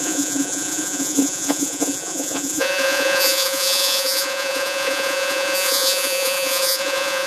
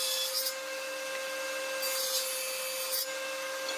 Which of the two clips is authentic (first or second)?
second